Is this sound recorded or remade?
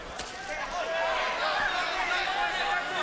recorded